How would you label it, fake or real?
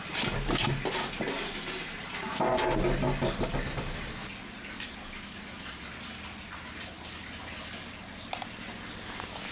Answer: real